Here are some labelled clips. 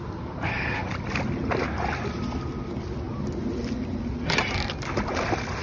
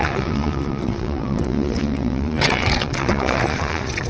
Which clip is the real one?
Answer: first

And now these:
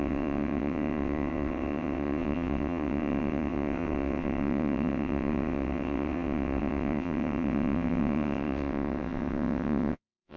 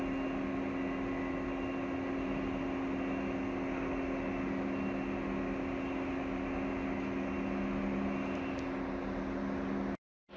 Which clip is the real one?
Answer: second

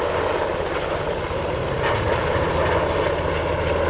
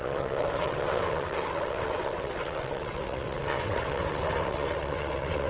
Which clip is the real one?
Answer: first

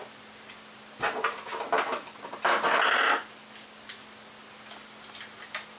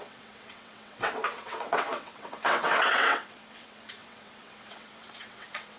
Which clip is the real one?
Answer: first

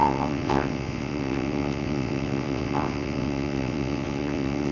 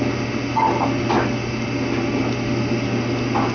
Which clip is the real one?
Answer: second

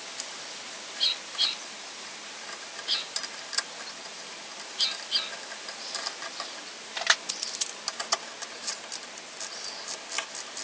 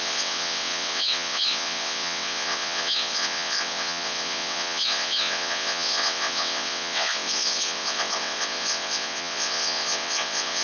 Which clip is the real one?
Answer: first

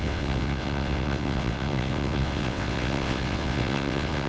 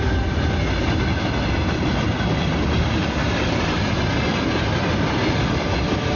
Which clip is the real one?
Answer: second